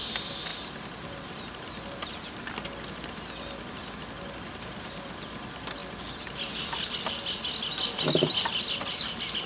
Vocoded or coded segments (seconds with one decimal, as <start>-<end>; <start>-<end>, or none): none